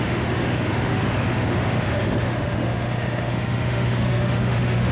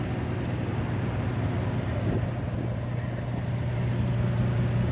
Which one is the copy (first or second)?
first